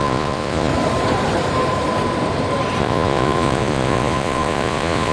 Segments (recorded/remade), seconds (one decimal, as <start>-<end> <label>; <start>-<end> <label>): 0.0-0.7 remade; 0.7-2.8 recorded; 2.8-5.1 remade

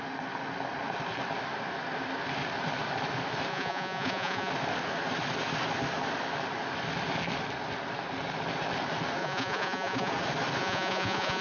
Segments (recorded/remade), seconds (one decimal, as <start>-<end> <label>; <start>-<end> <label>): 0.0-3.5 recorded; 3.5-4.5 remade; 4.5-9.2 recorded; 9.2-10.1 remade; 10.1-10.6 recorded; 10.6-11.4 remade

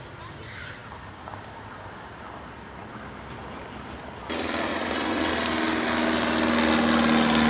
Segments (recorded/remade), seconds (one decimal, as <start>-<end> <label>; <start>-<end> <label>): 0.0-4.7 recorded; 4.7-5.3 remade; 5.3-7.5 recorded

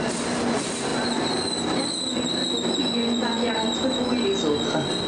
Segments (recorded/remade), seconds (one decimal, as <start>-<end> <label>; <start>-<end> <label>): 0.0-2.8 recorded; 2.8-3.5 remade; 3.5-5.1 recorded

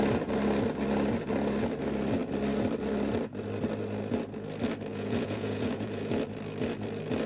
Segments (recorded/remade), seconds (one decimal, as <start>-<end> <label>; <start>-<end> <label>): 0.0-4.9 recorded; 4.9-6.1 remade; 6.1-7.3 recorded

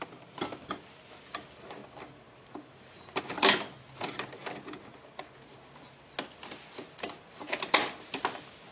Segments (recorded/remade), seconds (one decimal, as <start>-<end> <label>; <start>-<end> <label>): 0.0-8.7 recorded

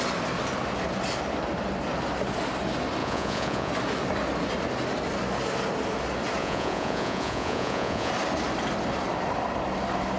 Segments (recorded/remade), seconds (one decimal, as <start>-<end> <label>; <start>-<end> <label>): 0.0-3.0 recorded; 3.0-3.7 remade; 3.7-6.4 recorded; 6.4-8.1 remade; 8.1-10.2 recorded

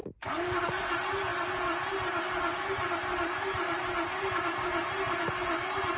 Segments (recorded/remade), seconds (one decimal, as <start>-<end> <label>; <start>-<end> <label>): 0.0-6.0 recorded